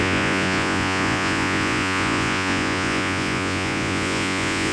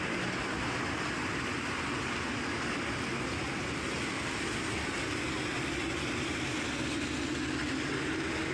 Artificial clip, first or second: first